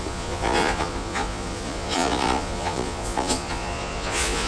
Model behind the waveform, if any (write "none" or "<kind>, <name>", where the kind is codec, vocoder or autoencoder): vocoder, Vocos